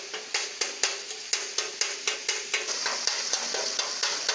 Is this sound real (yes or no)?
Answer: yes